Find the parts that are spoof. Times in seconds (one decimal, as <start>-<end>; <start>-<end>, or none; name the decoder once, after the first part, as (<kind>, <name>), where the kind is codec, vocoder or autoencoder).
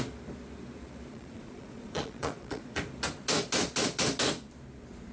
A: 1.1-2.8 (vocoder, Vocos)